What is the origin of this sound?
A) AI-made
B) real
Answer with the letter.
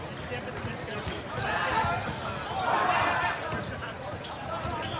B